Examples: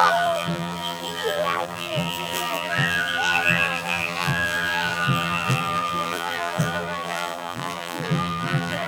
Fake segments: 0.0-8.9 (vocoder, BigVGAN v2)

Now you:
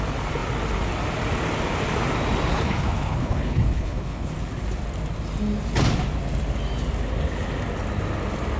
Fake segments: 2.5-4.3 (codec, HILCodec)

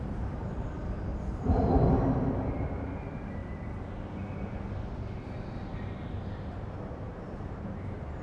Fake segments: 0.0-3.4 (vocoder, BigVGAN v2); 6.1-8.2

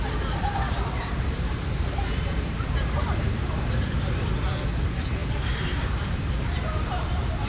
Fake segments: 1.1-4.1 (vocoder, BigVGAN v2); 5.2-7.1

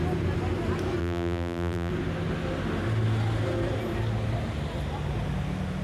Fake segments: 1.0-1.9 (vocoder, BigVGAN v2)